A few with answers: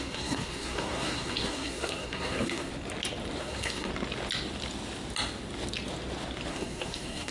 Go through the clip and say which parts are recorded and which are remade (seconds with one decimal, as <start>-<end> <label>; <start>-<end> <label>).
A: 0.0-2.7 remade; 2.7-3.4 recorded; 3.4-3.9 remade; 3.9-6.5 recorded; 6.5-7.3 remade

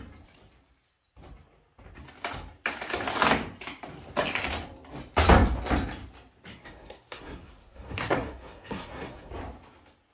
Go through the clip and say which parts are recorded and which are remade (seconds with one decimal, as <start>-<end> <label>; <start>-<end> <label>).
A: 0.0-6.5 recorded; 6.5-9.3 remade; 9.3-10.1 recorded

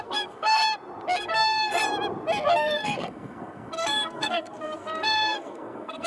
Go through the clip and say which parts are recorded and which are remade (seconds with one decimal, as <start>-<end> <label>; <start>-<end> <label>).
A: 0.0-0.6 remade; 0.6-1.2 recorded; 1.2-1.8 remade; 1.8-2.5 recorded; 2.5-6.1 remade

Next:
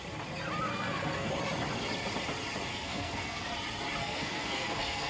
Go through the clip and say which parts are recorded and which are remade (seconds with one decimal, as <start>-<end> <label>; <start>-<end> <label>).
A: 0.0-0.7 recorded; 0.7-1.3 remade; 1.3-2.7 recorded; 2.7-3.5 remade; 3.5-4.0 recorded; 4.0-5.1 remade

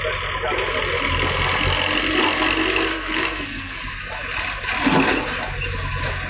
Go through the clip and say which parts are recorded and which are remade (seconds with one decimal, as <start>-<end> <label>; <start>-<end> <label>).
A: 0.0-2.9 recorded; 2.9-3.8 remade; 3.8-6.3 recorded

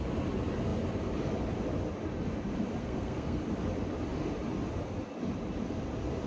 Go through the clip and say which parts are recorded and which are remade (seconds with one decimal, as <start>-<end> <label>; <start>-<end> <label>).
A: 0.0-2.8 recorded; 2.8-3.4 remade; 3.4-6.3 recorded

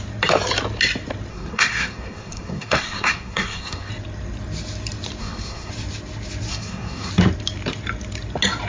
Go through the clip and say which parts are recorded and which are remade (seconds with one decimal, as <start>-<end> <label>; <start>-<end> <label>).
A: 0.0-1.3 recorded; 1.3-3.9 remade; 3.9-5.2 recorded; 5.2-5.7 remade; 5.7-6.5 recorded; 6.5-7.1 remade; 7.1-8.7 recorded